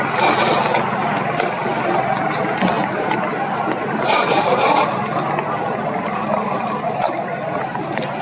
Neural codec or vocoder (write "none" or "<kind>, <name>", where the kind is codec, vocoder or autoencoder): none